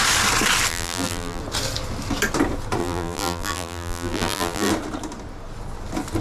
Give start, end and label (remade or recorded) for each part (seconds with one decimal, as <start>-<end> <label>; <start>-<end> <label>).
0.0-0.7 recorded; 0.7-1.4 remade; 1.4-2.8 recorded; 2.8-4.7 remade; 4.7-6.2 recorded